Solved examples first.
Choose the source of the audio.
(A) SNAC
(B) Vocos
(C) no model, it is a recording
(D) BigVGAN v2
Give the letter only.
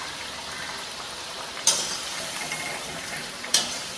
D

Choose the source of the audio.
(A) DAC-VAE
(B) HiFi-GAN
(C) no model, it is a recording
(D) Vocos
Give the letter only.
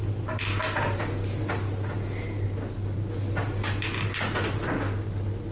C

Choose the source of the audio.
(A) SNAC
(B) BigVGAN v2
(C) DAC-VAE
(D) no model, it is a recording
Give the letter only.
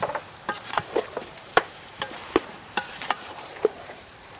B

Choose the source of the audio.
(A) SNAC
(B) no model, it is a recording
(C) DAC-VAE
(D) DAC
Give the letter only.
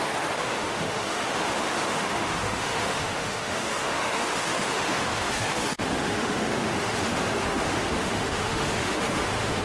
C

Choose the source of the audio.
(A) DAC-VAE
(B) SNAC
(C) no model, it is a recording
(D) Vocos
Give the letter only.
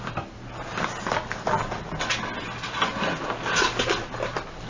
C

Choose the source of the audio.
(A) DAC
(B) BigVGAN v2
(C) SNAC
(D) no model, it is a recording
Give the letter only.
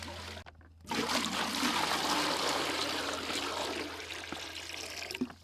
D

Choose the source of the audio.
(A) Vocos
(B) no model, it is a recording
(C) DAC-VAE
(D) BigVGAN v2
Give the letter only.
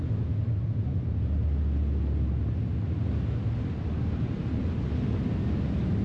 B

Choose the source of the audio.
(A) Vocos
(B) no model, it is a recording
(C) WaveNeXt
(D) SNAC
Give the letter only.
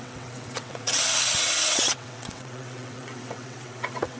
C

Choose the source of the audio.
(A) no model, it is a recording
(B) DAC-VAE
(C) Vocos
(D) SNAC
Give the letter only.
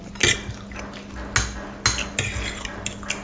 A